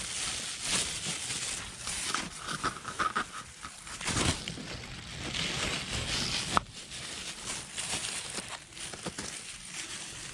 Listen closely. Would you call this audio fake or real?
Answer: real